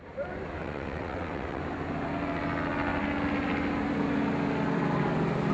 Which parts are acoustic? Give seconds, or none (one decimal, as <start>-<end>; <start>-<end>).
0.0-0.6; 1.6-5.5